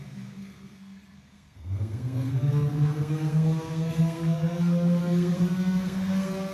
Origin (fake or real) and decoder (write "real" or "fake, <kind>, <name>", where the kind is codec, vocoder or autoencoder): fake, codec, SNAC